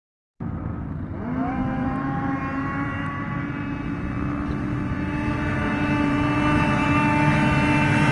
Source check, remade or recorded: recorded